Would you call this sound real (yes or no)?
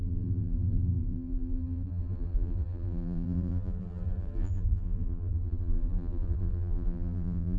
no